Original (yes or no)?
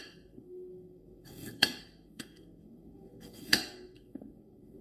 no